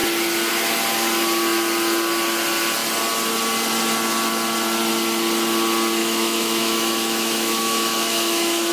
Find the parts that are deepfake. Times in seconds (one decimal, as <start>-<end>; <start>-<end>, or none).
6.0-8.7